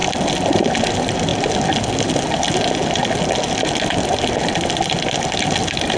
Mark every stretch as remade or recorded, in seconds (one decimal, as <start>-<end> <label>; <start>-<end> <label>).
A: 0.0-6.0 recorded